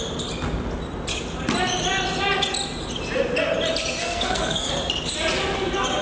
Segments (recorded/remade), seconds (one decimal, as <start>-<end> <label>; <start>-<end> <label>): 0.0-4.0 recorded; 4.0-4.7 remade; 4.7-6.0 recorded